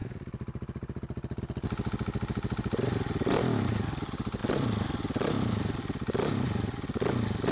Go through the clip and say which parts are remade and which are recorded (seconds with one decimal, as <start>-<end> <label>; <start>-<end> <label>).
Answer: 0.0-1.4 remade; 1.4-4.4 recorded; 4.4-6.5 remade; 6.5-7.5 recorded

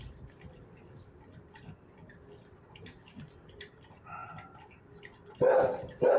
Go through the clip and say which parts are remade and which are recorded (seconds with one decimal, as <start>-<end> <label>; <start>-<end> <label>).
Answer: 0.0-6.2 recorded